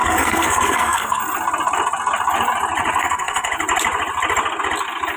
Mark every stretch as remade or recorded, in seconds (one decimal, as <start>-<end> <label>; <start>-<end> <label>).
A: 0.0-1.2 remade; 1.2-3.0 recorded; 3.0-3.5 remade; 3.5-5.2 recorded